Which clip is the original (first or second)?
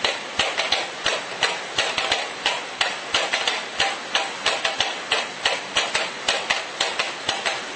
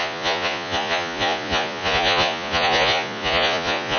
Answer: first